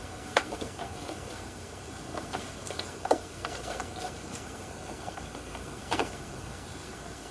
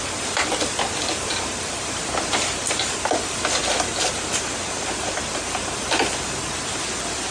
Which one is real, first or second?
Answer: second